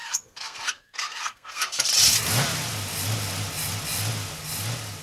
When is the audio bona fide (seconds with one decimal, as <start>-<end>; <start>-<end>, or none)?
1.9-5.0